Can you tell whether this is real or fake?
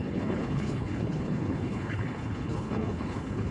fake